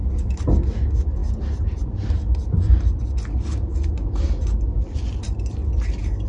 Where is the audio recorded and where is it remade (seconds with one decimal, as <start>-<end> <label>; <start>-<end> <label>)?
0.0-6.3 recorded